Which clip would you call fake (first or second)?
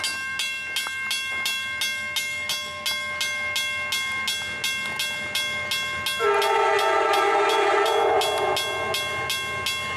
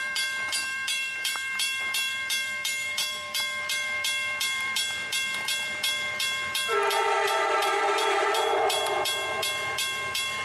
second